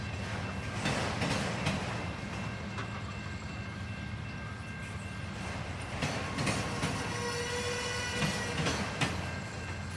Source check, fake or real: real